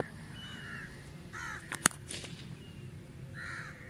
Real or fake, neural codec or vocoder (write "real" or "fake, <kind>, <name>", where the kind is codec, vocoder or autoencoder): fake, vocoder, BigVGAN v2